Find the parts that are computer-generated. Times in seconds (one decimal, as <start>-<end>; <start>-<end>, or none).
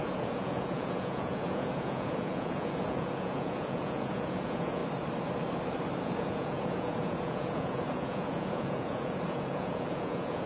0.0-4.8; 6.0-10.5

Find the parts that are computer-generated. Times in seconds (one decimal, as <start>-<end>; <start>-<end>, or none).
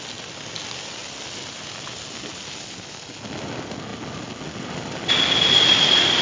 none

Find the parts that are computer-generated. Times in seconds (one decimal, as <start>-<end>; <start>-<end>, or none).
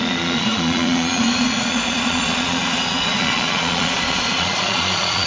0.0-5.3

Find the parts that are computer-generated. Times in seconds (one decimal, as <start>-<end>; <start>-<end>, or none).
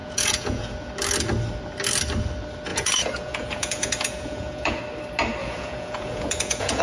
0.0-0.9; 2.7-4.8; 5.4-6.8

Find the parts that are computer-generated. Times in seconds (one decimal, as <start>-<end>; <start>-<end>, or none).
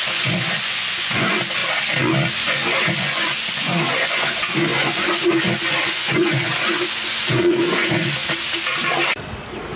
0.0-1.6; 2.3-8.2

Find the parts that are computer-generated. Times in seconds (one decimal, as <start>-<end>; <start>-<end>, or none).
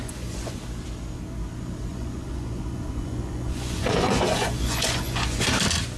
0.0-0.6; 1.9-5.5